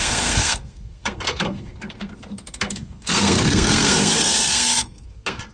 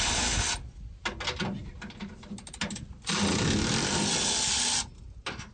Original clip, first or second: second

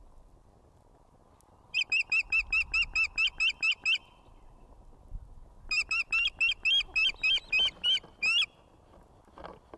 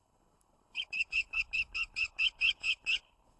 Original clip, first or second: first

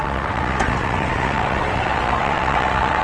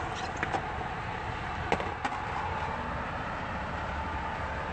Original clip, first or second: second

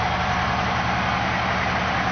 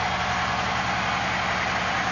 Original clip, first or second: second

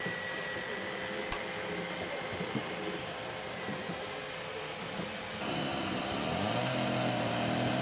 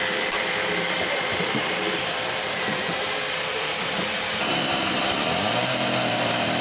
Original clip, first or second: first